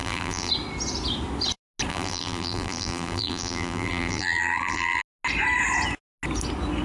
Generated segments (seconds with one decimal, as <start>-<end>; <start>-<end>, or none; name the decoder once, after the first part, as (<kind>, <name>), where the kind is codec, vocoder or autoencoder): 0.0-0.5 (vocoder, BigVGAN v2); 1.9-5.0